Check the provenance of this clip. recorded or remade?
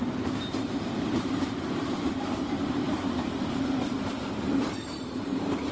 remade